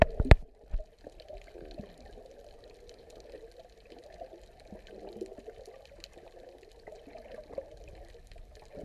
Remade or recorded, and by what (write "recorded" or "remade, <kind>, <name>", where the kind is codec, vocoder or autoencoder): recorded